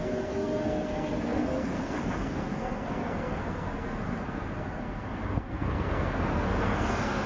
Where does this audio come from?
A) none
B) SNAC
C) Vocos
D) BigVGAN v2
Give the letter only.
B